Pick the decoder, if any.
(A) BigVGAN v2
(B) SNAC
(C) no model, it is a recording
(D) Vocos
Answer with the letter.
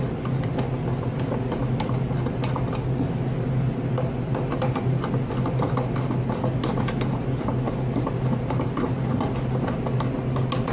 C